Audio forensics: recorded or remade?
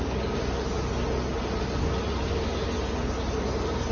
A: recorded